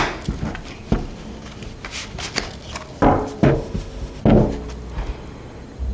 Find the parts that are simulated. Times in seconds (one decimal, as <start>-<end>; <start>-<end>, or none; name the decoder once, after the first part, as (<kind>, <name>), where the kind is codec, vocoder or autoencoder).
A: 3.4-4.2 (autoencoder, DAC-VAE)